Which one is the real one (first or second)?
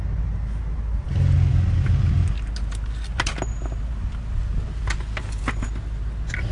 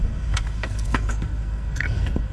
first